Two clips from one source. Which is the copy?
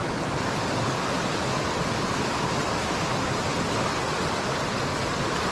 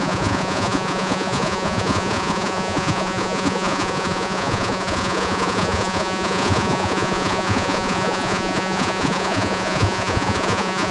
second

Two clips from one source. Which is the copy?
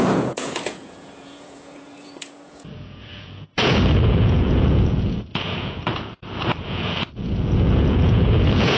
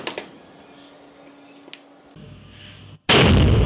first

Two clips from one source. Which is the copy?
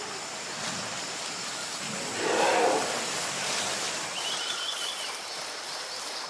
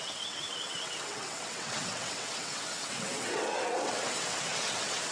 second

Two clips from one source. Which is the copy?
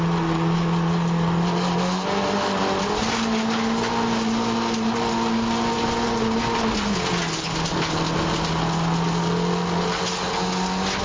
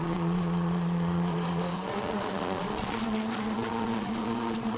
second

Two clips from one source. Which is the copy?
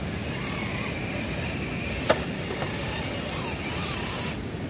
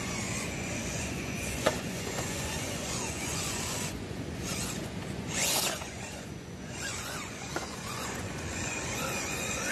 second